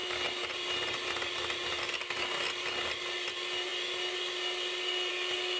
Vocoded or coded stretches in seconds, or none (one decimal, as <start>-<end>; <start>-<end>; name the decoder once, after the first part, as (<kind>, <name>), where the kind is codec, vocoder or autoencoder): none

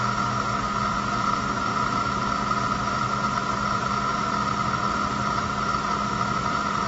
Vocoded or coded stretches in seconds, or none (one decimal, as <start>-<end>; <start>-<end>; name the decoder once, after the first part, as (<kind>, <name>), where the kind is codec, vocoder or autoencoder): none

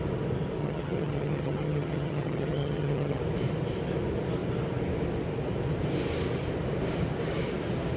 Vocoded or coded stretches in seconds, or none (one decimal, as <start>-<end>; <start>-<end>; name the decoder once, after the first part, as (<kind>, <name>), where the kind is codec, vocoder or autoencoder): 0.6-3.2 (vocoder, HiFi-GAN)